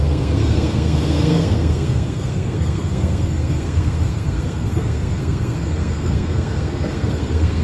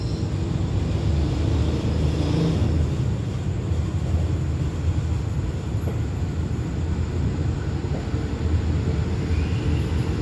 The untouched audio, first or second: second